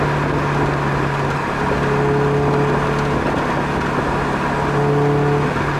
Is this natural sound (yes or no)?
yes